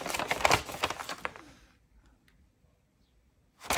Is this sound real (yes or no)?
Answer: yes